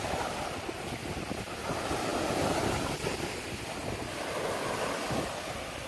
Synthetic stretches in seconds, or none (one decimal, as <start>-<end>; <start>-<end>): none

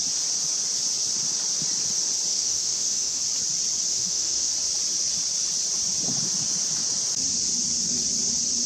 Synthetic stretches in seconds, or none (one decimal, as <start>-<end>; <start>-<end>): 2.3-3.2; 3.9-4.5

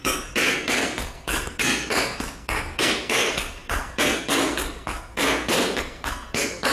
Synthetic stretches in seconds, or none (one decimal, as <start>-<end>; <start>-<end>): 0.0-6.7

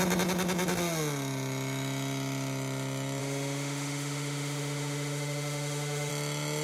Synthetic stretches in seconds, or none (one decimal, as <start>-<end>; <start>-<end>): 3.2-6.1

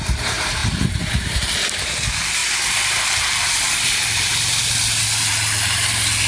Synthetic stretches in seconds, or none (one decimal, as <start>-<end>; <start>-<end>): none

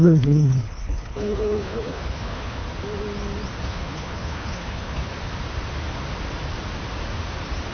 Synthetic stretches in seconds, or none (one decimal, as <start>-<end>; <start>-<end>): 0.0-2.6; 3.6-5.1